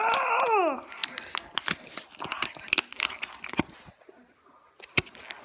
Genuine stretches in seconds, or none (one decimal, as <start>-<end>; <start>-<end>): 0.0-5.4